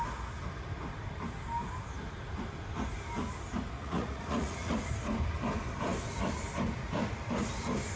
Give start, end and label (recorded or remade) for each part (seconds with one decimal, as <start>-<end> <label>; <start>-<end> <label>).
0.0-3.8 recorded; 3.8-4.7 remade; 4.7-8.0 recorded